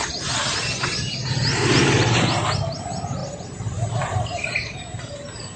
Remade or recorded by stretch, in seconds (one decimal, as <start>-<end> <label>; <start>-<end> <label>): 0.0-5.6 recorded